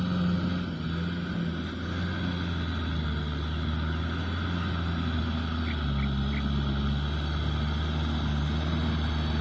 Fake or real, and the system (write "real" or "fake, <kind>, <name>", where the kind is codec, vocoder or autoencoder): real